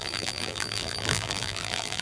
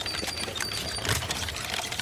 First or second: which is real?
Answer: second